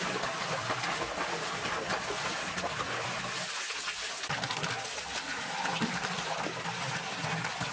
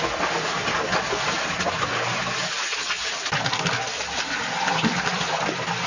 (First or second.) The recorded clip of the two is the second